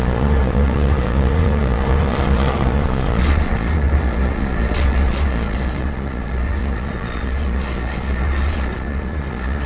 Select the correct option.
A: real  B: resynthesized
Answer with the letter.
B